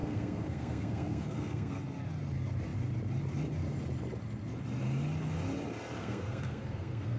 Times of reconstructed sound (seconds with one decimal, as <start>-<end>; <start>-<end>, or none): 0.0-1.8; 6.0-7.2